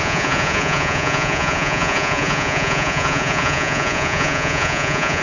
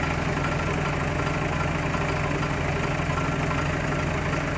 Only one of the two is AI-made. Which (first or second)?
first